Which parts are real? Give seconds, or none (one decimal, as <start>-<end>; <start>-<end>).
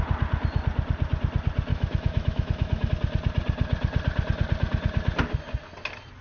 0.0-1.7; 2.9-6.2